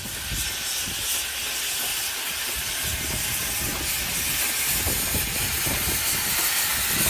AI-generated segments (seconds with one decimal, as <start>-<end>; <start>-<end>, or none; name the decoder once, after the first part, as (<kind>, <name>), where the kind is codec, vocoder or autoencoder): 1.9-2.5 (vocoder, BigVGAN v2)